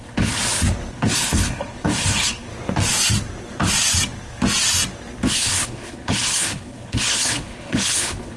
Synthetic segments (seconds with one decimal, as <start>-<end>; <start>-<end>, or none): 0.0-0.4; 0.9-2.5; 5.3-8.4